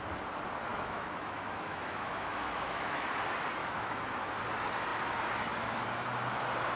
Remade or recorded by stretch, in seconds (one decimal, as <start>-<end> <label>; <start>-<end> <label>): 0.0-0.7 recorded; 0.7-3.1 remade; 3.1-3.6 recorded; 3.6-4.3 remade; 4.3-6.8 recorded